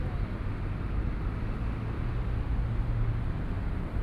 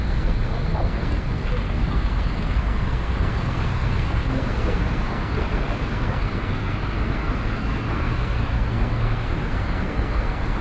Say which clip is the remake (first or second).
second